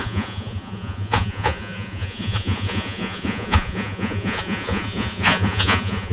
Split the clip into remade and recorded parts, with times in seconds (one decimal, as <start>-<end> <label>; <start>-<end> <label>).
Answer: 0.0-6.1 remade